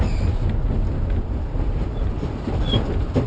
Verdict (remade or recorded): recorded